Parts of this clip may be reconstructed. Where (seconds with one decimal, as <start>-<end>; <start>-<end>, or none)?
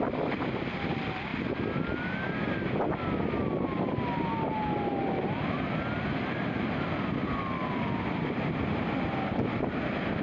none